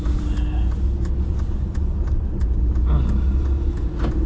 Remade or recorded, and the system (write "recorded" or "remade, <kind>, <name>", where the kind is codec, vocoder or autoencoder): recorded